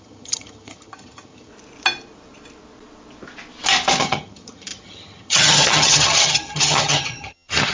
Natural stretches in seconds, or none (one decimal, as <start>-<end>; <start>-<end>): 1.5-4.0